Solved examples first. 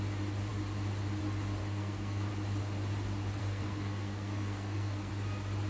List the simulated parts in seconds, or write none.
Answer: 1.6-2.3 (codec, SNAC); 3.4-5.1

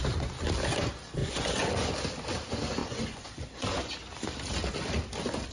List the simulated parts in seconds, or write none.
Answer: 1.2-1.9 (vocoder, Vocos); 2.8-3.9

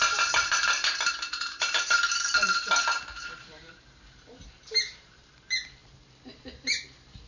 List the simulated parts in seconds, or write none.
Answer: 0.0-7.3 (vocoder, BigVGAN v2)

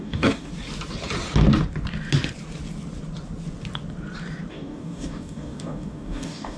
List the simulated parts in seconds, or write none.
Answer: 0.0-0.5 (codec, DAC); 4.5-6.6

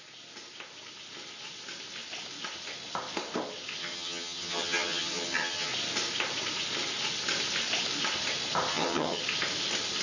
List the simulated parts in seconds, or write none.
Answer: 3.8-5.7 (vocoder, HiFi-GAN); 8.7-9.2